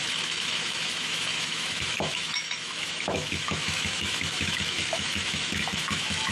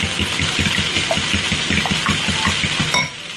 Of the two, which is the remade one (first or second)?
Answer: first